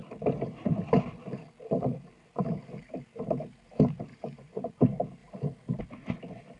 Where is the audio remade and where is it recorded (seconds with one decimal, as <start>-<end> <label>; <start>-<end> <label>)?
0.0-4.1 recorded; 4.1-4.7 remade; 4.7-6.6 recorded